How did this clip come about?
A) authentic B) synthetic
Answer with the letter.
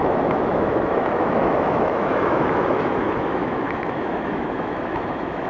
B